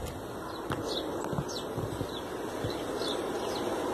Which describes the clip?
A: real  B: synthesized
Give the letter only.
B